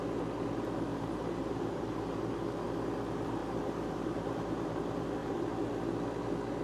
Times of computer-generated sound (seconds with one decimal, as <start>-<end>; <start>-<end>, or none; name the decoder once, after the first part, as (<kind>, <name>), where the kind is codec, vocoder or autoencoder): 0.9-2.2 (vocoder, BigVGAN v2); 3.4-4.8; 5.2-5.7